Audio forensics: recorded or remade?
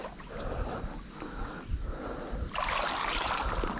recorded